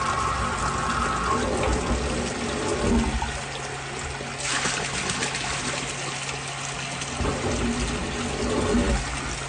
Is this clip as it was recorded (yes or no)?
yes